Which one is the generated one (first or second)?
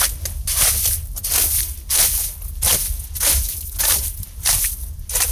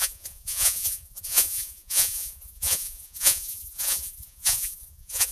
second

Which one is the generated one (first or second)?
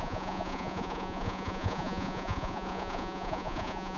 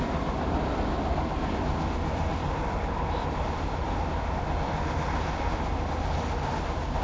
first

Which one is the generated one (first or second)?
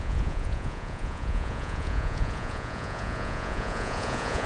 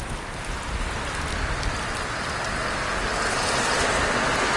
first